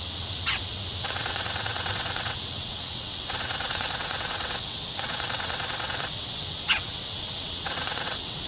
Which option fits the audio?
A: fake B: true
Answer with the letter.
A